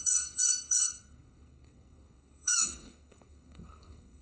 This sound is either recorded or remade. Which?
remade